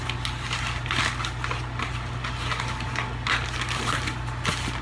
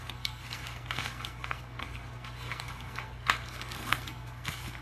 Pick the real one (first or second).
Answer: first